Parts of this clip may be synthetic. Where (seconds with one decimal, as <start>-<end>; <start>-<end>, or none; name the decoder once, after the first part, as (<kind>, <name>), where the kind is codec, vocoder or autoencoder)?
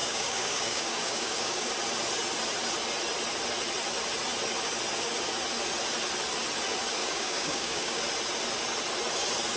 0.0-1.7 (codec, DAC); 7.0-8.0